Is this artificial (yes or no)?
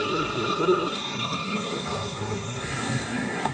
yes